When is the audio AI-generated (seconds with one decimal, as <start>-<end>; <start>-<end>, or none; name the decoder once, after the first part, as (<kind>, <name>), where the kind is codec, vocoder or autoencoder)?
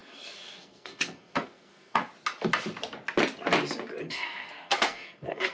0.0-2.1 (codec, SNAC); 4.0-5.5